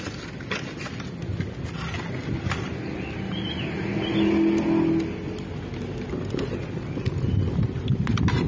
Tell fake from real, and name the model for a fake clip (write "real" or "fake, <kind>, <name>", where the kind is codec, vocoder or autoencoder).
real